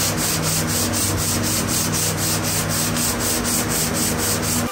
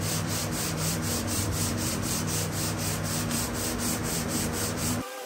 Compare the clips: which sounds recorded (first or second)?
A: first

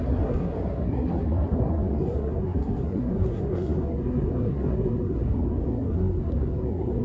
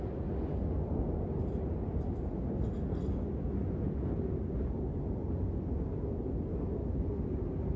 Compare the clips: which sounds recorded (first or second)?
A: second